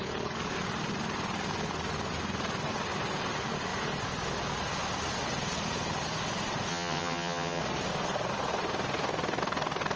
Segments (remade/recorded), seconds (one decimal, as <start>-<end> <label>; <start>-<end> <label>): 0.0-6.7 recorded; 6.7-7.6 remade; 7.6-10.0 recorded